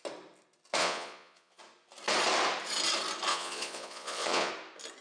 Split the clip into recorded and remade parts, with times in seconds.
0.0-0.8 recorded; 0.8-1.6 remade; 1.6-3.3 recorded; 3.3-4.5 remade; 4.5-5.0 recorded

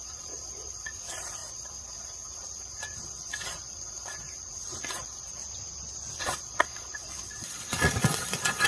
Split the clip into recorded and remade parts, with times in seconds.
0.0-5.4 remade; 5.4-6.2 recorded; 6.2-8.7 remade